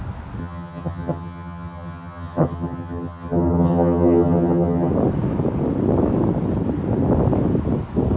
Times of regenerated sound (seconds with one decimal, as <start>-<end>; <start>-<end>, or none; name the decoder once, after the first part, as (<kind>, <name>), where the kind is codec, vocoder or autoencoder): 0.4-4.9 (vocoder, HiFi-GAN)